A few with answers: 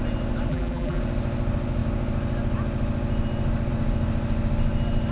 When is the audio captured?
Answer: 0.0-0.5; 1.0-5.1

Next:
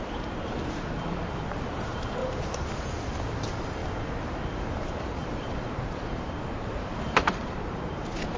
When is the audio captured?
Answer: 2.2-3.4; 3.8-4.8

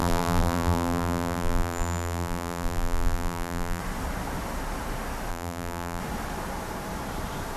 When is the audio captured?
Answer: 3.8-5.3; 6.0-7.6

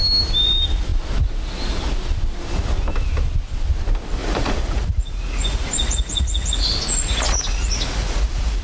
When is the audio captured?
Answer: 0.0-4.2